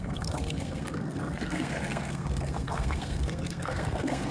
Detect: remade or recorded remade